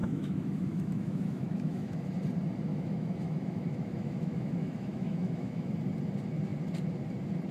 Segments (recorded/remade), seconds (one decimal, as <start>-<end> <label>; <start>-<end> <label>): 0.0-2.1 remade; 2.1-2.7 recorded; 2.7-5.7 remade; 5.7-7.5 recorded